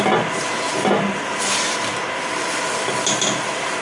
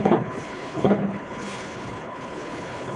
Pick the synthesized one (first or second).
second